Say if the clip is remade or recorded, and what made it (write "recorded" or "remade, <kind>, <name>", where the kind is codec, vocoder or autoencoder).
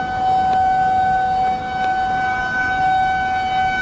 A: recorded